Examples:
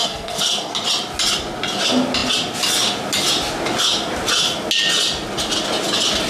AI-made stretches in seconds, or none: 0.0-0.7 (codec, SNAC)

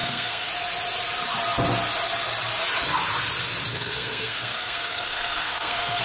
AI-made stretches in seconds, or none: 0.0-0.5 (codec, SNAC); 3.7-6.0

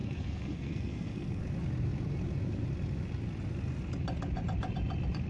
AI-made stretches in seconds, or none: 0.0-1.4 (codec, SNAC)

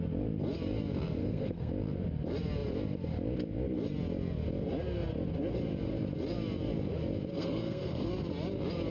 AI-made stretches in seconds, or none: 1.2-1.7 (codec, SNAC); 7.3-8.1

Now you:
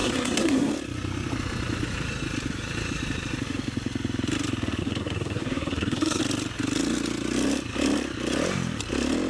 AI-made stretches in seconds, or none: 0.0-0.7 (codec, SNAC); 4.8-6.2